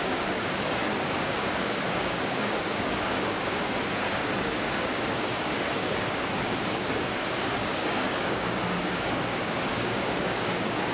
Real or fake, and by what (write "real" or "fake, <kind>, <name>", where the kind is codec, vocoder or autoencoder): fake, codec, DAC